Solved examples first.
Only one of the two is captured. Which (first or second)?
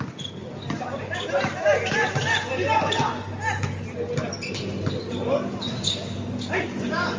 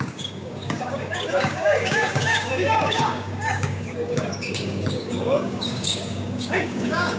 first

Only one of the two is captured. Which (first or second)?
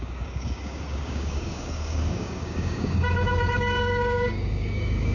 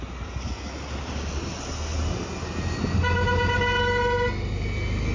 second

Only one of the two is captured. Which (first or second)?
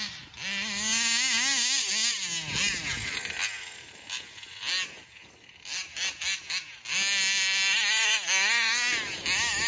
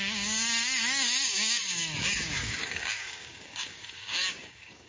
first